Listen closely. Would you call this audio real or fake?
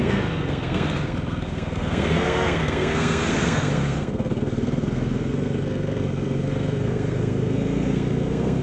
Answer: fake